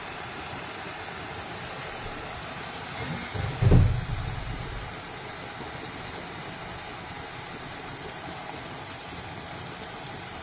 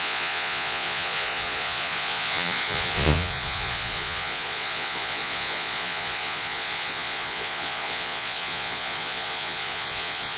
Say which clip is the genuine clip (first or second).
first